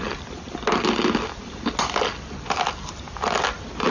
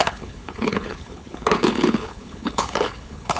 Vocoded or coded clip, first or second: second